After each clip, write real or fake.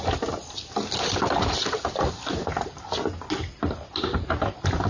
fake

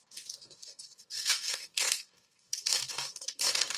fake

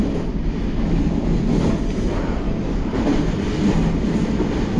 real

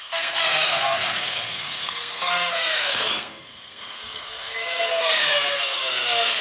fake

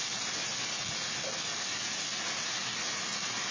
real